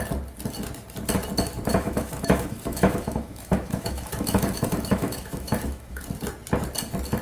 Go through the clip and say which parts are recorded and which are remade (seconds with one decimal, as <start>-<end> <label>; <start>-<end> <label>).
0.0-1.7 recorded; 1.7-6.0 remade; 6.0-7.2 recorded